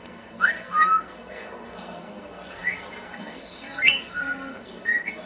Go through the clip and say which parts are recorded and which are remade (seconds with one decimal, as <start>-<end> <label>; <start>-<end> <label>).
0.0-5.3 remade